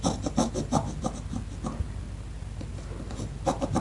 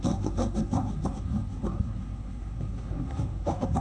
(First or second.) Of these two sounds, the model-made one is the second